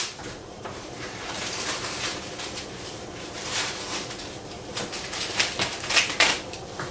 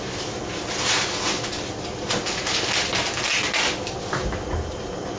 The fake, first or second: first